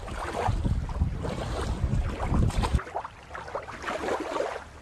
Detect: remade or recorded recorded